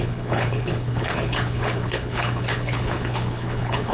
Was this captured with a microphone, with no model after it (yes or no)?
no